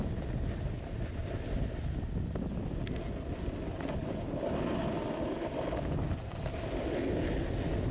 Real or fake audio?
real